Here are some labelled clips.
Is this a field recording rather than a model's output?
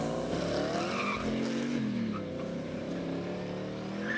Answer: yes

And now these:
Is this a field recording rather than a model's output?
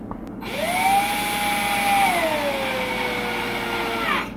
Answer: yes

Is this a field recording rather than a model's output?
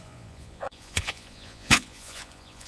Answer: no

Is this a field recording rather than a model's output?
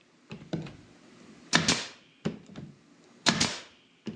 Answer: yes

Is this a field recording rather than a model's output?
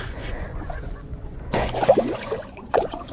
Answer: no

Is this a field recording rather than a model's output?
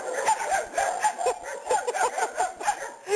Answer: yes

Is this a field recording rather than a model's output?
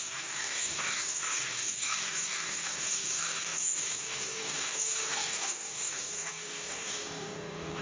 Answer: no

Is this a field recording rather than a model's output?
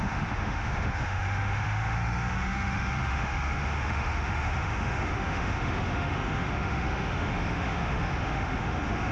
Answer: no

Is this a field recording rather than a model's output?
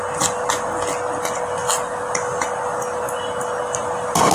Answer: yes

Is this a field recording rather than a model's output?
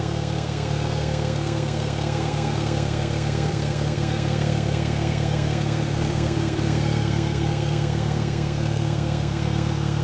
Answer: no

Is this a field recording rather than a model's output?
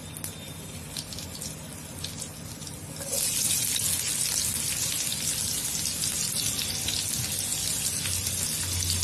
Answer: yes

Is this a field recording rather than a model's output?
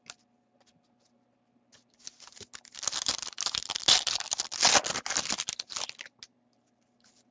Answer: yes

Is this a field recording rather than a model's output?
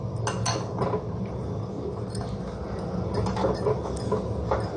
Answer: yes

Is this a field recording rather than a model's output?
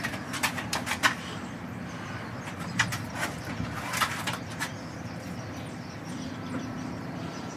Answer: no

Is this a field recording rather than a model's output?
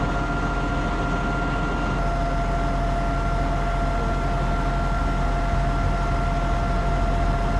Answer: yes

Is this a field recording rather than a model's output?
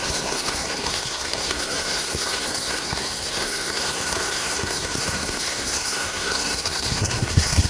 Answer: no